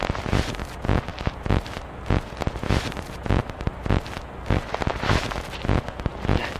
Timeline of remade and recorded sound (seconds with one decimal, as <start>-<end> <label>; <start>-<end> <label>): 0.0-0.7 remade; 0.7-1.1 recorded; 1.1-5.1 remade; 5.1-6.6 recorded